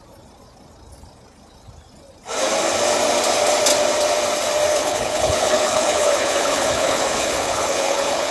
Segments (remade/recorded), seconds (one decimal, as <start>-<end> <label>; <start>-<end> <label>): 0.0-4.7 recorded; 4.7-8.3 remade